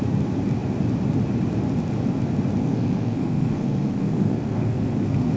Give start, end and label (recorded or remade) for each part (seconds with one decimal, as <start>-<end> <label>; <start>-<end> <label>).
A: 0.0-2.6 recorded; 2.6-5.4 remade